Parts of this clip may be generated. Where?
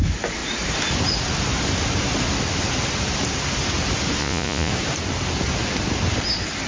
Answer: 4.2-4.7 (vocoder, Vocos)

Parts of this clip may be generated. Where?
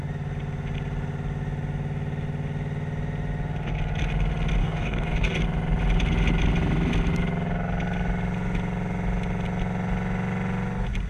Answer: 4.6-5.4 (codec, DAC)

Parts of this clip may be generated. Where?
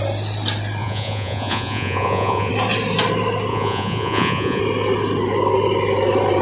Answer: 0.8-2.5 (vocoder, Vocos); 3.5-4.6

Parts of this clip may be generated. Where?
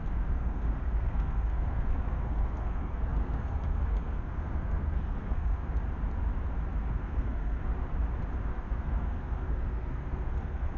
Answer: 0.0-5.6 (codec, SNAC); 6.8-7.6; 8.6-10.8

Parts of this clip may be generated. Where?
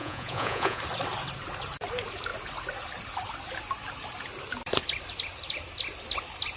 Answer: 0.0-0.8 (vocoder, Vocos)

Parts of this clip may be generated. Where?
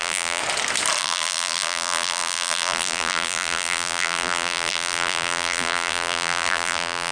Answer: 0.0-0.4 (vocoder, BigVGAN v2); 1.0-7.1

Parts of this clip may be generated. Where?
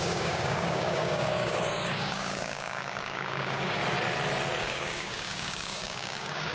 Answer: 0.0-3.8 (codec, DAC); 4.6-6.5